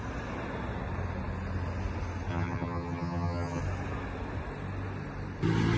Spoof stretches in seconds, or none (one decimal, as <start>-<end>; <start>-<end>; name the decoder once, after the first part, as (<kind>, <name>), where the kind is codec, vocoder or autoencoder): 2.3-3.6 (vocoder, HiFi-GAN)